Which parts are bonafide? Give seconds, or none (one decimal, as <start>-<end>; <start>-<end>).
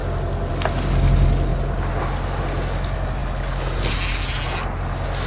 0.0-5.3